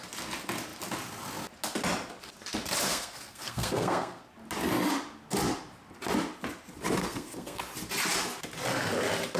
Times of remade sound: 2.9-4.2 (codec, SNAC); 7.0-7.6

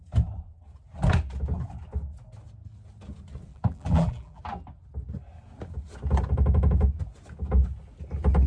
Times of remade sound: 3.5-4.4 (vocoder, BigVGAN v2)

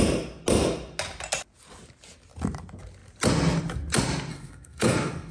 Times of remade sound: 4.3-5.3 (codec, SNAC)

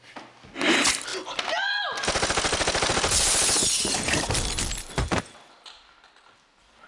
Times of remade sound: none

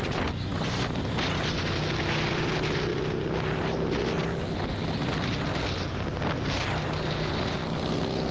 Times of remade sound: 2.9-3.8 (vocoder, BigVGAN v2)

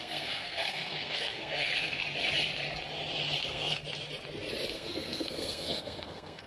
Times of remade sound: 0.0-2.0 (codec, SNAC); 3.4-3.8; 4.7-6.5

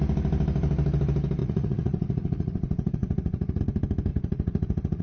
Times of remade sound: 1.4-3.6 (vocoder, Vocos); 4.1-5.0